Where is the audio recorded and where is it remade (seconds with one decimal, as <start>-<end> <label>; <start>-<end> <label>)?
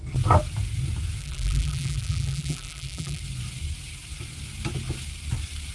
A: 0.0-1.2 recorded; 1.2-3.2 remade; 3.2-5.7 recorded